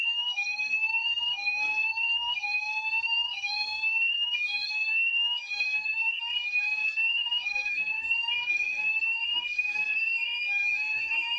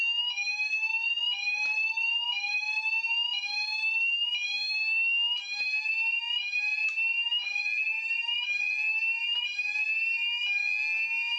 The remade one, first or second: first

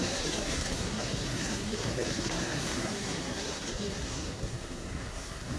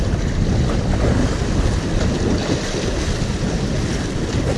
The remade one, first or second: first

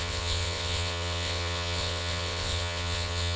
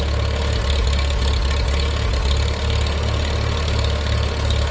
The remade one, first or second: first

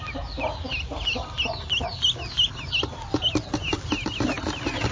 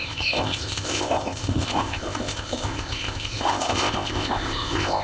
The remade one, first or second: second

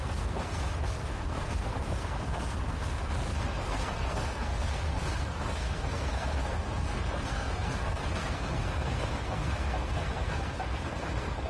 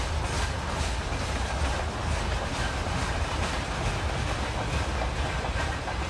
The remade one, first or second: first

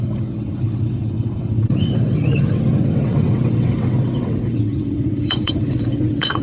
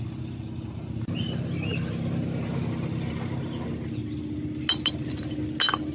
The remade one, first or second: first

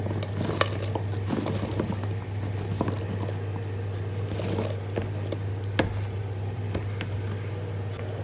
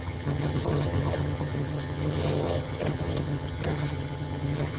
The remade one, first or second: second